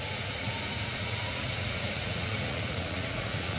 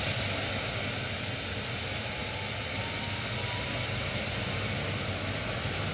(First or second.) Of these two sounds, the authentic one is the second